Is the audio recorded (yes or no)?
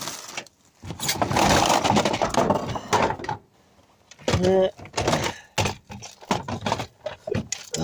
yes